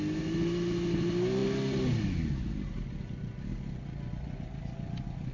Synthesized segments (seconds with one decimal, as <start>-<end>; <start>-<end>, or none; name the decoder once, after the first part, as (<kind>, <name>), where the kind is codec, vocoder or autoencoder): none